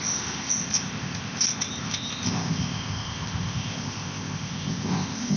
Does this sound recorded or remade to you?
remade